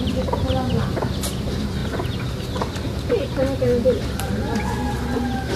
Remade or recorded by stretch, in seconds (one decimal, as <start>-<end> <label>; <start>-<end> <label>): 0.0-5.6 recorded